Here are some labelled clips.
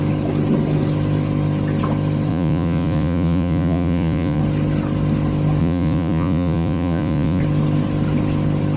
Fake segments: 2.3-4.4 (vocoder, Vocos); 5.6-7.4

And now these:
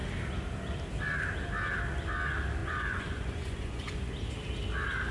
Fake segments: 2.6-4.1 (vocoder, Vocos)

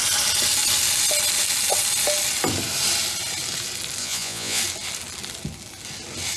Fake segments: 4.0-4.6 (vocoder, Vocos)